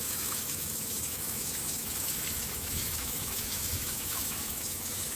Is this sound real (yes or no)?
no